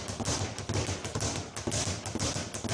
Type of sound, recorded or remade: recorded